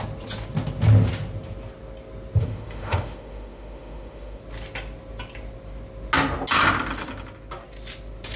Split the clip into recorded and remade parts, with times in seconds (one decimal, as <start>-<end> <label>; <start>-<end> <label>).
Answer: 0.0-2.4 recorded; 2.4-4.4 remade; 4.4-8.4 recorded